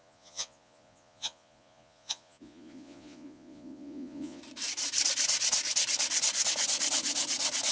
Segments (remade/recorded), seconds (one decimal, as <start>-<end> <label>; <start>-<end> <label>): 0.0-4.4 remade; 4.4-7.7 recorded